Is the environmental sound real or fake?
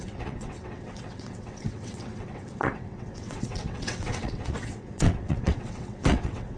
fake